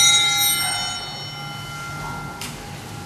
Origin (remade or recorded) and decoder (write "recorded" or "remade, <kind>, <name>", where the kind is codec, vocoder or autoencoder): recorded